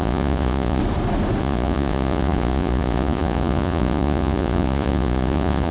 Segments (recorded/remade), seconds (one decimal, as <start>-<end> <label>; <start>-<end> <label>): 0.0-0.8 remade; 0.8-1.4 recorded; 1.4-5.7 remade